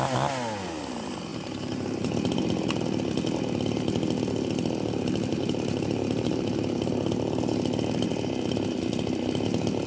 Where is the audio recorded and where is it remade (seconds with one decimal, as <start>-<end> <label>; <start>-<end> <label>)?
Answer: 0.0-1.3 recorded; 1.3-2.5 remade; 2.5-5.3 recorded; 5.3-6.9 remade; 6.9-9.9 recorded